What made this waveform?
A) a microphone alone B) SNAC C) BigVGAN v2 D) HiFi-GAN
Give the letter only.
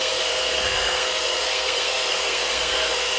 B